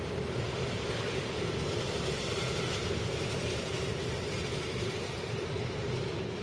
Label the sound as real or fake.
real